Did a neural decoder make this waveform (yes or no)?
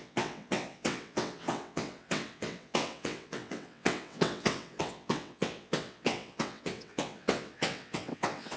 yes